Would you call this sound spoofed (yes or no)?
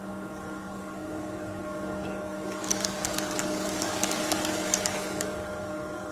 yes